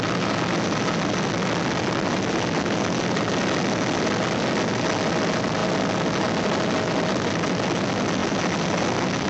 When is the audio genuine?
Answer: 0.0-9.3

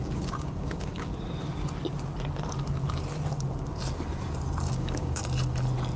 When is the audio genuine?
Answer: 1.1-4.7; 5.2-6.0